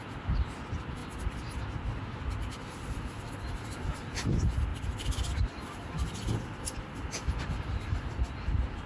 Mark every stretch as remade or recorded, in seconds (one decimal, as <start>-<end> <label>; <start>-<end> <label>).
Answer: 0.0-8.9 recorded